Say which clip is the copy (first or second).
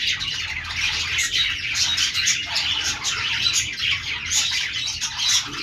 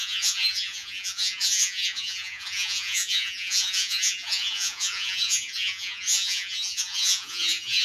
second